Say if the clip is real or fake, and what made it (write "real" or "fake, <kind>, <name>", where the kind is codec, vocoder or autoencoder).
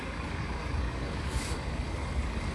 fake, codec, DAC